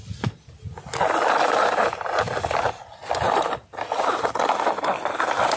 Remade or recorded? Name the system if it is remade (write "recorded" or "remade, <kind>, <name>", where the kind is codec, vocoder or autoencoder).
recorded